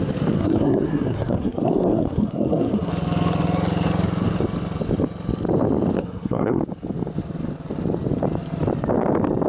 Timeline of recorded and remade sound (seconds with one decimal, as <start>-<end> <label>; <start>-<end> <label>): 0.0-0.4 recorded; 0.4-2.9 remade; 2.9-6.0 recorded; 6.0-6.6 remade; 6.6-9.5 recorded